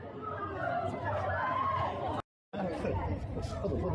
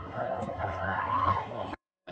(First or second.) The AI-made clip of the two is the second